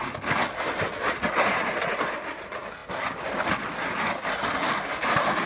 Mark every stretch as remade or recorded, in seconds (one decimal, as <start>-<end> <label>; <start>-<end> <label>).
0.0-5.5 recorded